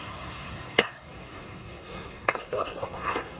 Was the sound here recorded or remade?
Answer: remade